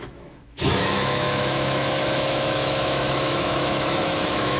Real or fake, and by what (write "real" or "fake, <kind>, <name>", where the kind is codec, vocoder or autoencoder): fake, autoencoder, DAC-VAE